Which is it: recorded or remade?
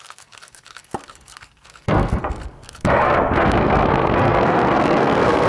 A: remade